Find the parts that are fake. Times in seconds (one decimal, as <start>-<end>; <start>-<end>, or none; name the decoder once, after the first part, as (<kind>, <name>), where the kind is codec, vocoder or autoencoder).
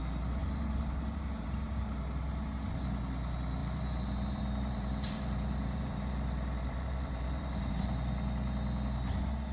0.4-2.4 (vocoder, BigVGAN v2); 3.6-7.7